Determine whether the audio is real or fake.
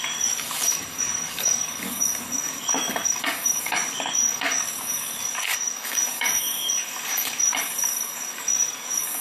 fake